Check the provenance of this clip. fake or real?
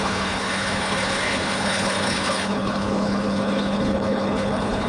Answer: fake